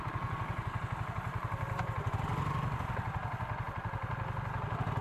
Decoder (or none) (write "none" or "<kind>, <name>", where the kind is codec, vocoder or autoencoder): none